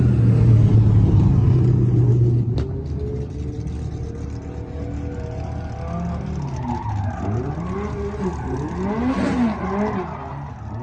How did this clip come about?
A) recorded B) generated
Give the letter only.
A